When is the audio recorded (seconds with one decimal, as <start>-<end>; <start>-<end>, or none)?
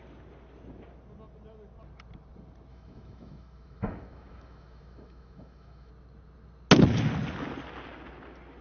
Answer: 0.0-2.7; 5.9-8.6